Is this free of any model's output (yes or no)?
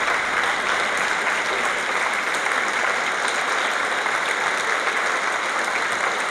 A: yes